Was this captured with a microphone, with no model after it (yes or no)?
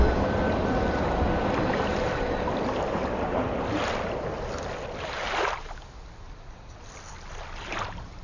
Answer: yes